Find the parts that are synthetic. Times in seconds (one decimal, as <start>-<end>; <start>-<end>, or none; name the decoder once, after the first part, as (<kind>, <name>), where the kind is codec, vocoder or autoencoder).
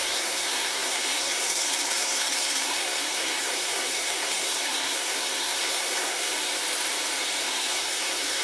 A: 0.0-6.3 (codec, SNAC); 7.4-8.4